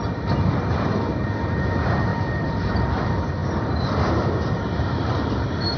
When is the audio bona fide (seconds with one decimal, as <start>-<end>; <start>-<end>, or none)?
0.0-2.1; 3.0-3.4; 4.6-5.8